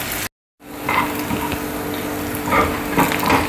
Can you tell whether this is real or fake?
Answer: real